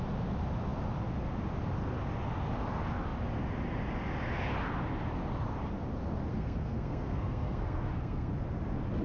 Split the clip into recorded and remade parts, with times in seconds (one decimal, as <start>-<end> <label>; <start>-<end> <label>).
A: 0.0-6.3 recorded; 6.3-8.3 remade; 8.3-9.0 recorded